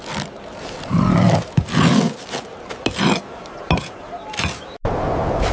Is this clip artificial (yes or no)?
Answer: no